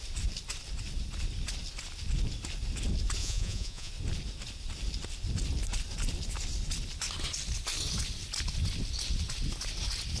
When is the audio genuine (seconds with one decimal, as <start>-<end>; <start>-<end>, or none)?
0.0-3.2; 3.9-10.2